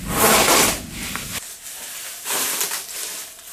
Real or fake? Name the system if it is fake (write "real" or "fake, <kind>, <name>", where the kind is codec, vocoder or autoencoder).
real